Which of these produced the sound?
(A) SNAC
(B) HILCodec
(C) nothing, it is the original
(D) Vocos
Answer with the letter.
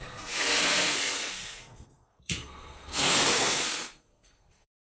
A